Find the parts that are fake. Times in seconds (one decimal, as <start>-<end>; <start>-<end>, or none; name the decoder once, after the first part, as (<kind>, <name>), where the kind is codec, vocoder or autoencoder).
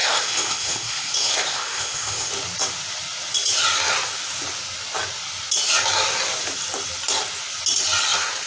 0.0-2.3 (codec, ZipCodec)